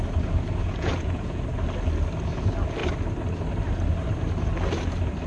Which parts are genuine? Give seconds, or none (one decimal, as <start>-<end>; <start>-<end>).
0.0-0.6; 1.4-5.3